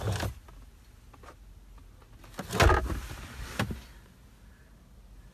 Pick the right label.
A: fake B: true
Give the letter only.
B